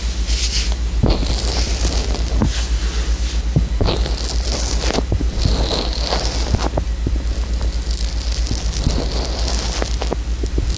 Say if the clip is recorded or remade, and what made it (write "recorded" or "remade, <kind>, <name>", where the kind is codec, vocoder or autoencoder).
recorded